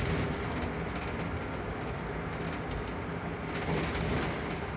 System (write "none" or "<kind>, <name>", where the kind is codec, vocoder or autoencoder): none